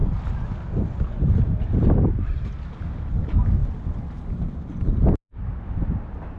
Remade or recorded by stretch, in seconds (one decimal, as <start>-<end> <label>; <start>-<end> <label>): 0.0-6.4 recorded

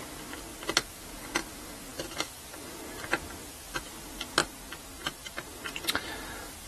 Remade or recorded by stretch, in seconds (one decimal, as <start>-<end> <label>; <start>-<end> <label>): 0.0-4.4 recorded; 4.4-6.1 remade; 6.1-6.7 recorded

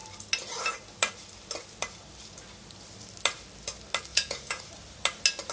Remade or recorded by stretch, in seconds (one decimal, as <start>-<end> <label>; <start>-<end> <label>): 0.0-4.1 recorded; 4.1-4.6 remade; 4.6-5.5 recorded

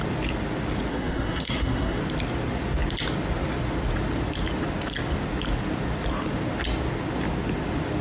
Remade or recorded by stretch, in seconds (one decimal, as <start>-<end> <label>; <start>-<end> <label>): 0.0-0.9 recorded; 0.9-2.0 remade; 2.0-8.0 recorded

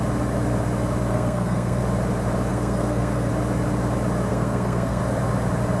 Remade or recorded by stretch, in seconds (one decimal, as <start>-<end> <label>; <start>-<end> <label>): 0.0-1.1 recorded; 1.1-1.8 remade; 1.8-2.5 recorded; 2.5-3.3 remade; 3.3-4.3 recorded; 4.3-5.0 remade; 5.0-5.8 recorded

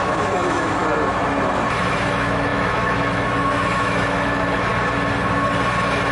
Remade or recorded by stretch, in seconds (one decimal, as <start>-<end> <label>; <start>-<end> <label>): 0.0-0.8 remade; 0.8-1.8 recorded; 1.8-4.7 remade; 4.7-6.1 recorded

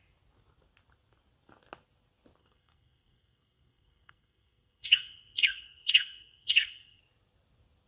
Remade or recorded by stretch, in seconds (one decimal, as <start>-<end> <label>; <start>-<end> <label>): 0.0-2.4 recorded; 2.4-7.0 remade; 7.0-7.9 recorded

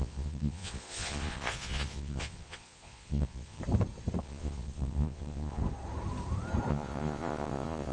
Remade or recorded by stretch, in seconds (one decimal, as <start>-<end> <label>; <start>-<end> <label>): 0.0-3.6 remade; 3.6-4.2 recorded; 4.2-5.6 remade; 5.6-6.7 recorded; 6.7-7.9 remade